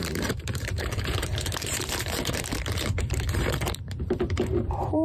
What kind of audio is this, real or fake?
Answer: fake